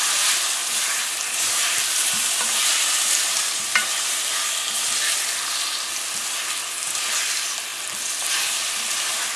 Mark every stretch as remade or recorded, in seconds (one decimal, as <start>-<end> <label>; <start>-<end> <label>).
0.0-0.6 recorded; 0.6-4.2 remade; 4.2-9.4 recorded